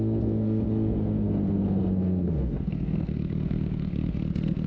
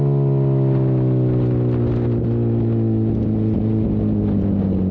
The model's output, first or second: first